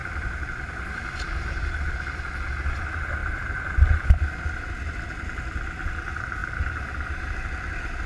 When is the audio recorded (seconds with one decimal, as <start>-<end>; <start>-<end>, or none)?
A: 0.0-8.1